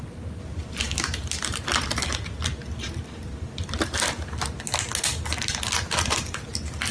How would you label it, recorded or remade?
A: recorded